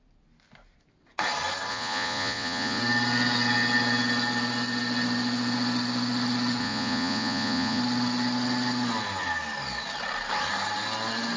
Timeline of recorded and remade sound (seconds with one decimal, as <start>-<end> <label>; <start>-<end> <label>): 0.0-1.7 recorded; 1.7-2.8 remade; 2.8-6.6 recorded; 6.6-7.8 remade; 7.8-11.4 recorded